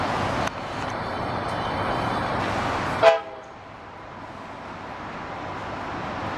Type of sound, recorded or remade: recorded